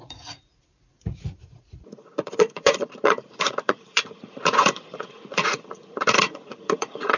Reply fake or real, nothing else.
fake